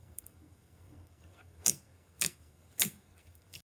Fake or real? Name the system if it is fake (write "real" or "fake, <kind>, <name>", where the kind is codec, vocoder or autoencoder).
fake, codec, SNAC